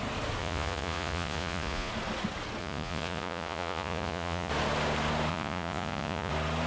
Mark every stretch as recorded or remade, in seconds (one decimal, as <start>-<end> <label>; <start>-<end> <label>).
0.0-0.4 recorded; 0.4-1.9 remade; 1.9-2.6 recorded; 2.6-4.5 remade; 4.5-5.3 recorded; 5.3-6.3 remade; 6.3-6.7 recorded